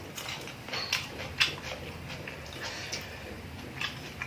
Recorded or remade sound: recorded